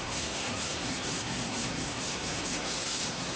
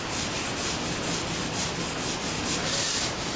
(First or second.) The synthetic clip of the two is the first